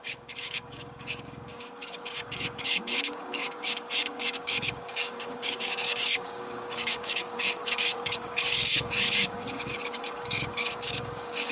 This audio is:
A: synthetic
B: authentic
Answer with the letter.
A